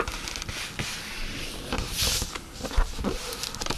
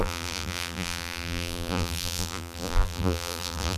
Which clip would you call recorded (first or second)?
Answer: first